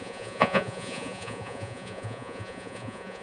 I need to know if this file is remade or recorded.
remade